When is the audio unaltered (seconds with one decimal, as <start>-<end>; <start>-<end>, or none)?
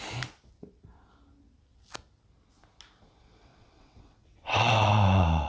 0.0-3.5; 4.9-5.5